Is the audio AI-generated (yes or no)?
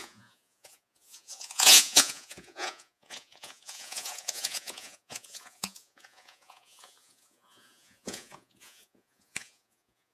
yes